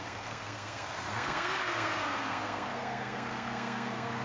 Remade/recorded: remade